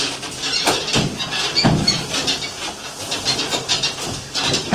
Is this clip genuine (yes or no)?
yes